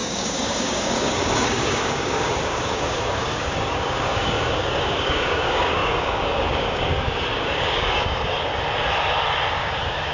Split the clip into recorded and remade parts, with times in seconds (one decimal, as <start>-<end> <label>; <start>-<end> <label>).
0.0-8.5 remade; 8.5-9.5 recorded; 9.5-10.1 remade